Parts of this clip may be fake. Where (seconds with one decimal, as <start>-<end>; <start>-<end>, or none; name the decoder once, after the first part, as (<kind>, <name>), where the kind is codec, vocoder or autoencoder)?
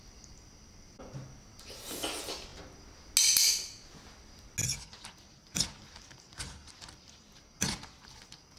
none